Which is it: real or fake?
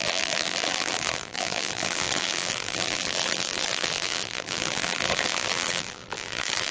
fake